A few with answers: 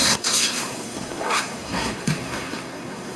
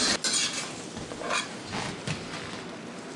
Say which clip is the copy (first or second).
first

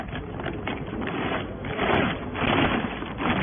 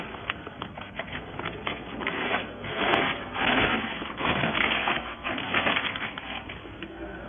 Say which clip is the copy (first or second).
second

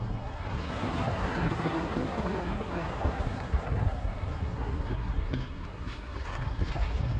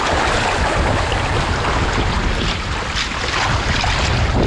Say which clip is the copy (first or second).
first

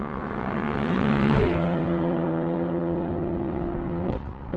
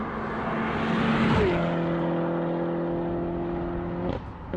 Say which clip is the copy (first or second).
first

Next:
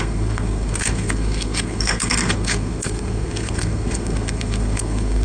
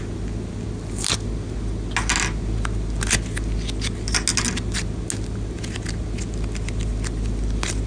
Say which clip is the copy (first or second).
first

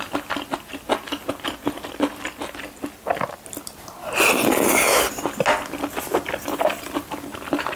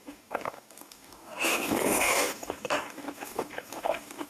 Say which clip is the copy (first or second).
second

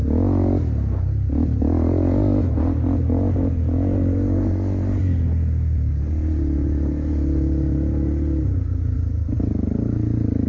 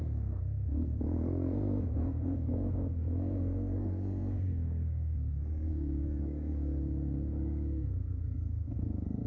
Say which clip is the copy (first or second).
second